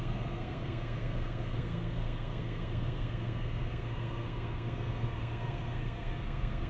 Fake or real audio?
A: fake